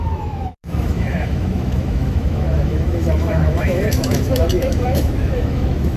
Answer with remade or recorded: remade